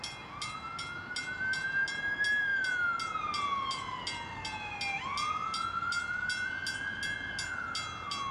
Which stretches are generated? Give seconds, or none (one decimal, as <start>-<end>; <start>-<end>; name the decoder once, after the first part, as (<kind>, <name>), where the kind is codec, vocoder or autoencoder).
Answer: none